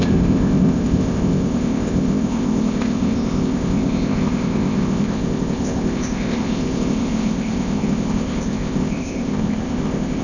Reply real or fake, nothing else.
fake